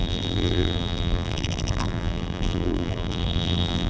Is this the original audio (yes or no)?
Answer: no